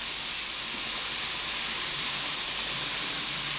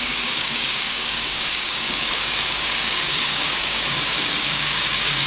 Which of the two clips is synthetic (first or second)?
second